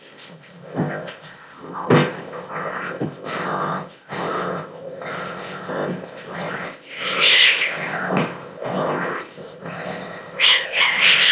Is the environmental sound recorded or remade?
remade